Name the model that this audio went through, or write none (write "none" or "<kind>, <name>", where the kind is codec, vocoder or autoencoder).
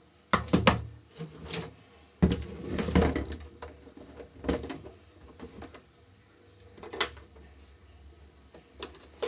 none